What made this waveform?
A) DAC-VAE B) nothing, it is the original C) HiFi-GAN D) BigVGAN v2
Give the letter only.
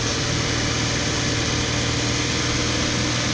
B